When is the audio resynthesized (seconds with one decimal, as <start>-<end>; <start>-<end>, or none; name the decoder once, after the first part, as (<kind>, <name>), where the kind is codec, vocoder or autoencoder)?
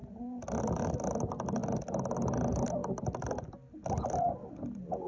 none